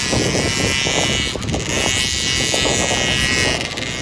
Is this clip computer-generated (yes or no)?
no